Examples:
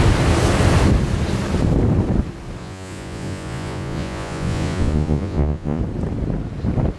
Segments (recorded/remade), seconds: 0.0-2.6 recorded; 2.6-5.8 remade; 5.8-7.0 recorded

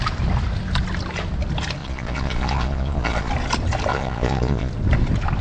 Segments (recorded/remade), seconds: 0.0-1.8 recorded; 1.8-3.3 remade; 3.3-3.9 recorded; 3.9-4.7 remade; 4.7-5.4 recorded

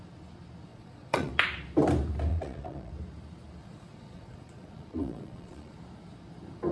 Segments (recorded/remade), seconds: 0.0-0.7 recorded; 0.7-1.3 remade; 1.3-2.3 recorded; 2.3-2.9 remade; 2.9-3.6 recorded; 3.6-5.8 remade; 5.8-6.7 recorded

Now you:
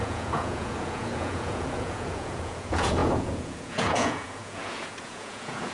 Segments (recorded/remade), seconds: 0.0-5.7 remade